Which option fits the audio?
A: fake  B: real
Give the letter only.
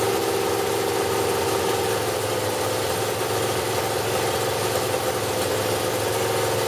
B